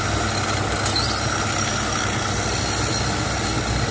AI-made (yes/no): no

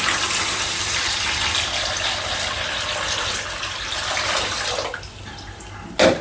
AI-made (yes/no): no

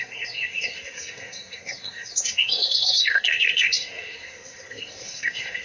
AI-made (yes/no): yes